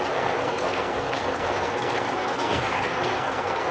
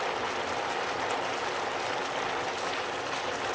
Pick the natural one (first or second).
second